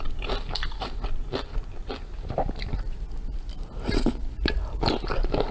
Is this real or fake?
real